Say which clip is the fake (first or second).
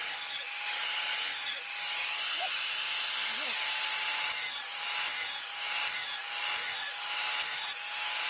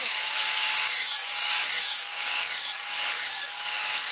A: second